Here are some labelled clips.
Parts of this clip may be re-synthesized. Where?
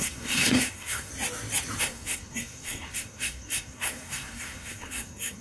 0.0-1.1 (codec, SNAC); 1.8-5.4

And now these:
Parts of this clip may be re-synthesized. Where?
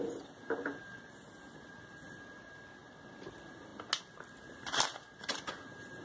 none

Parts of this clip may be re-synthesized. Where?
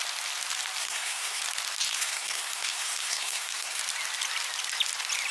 0.8-1.4 (codec, SNAC); 1.9-3.8